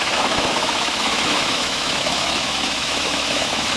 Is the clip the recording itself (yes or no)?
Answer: no